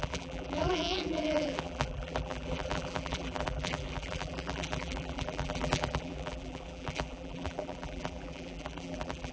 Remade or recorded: remade